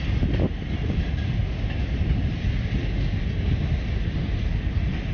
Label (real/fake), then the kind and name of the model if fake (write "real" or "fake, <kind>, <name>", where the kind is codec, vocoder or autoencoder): real